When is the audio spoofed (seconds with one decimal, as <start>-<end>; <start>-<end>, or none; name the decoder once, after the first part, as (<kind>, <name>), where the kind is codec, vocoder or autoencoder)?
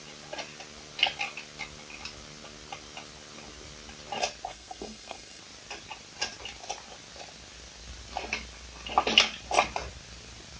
4.5-5.4 (codec, SNAC)